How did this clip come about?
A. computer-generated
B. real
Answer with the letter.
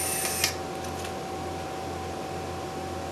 B